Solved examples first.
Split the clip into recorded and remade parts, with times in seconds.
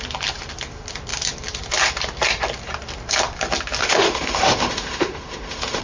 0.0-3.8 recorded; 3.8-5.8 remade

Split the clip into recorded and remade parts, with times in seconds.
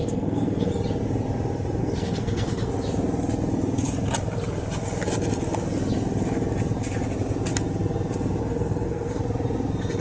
0.0-0.7 remade; 0.7-1.8 recorded; 1.8-2.7 remade; 2.7-8.4 recorded; 8.4-9.2 remade; 9.2-10.0 recorded